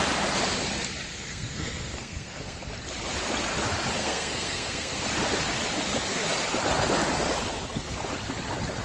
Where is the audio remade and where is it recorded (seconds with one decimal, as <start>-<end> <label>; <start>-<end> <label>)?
0.0-1.1 recorded; 1.1-2.7 remade; 2.7-4.0 recorded; 4.0-5.0 remade; 5.0-8.8 recorded